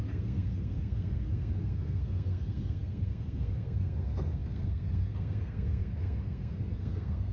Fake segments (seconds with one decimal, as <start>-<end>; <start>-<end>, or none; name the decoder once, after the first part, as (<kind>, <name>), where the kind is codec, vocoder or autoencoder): 0.0-7.3 (codec, SNAC)